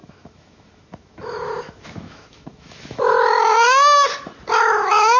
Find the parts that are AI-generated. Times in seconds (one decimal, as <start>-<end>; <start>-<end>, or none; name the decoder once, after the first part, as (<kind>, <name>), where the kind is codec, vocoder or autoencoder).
0.0-4.1 (autoencoder, DAC-VAE); 4.6-5.2